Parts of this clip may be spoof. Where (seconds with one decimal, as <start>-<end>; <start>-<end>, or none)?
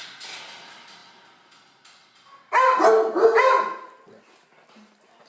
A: none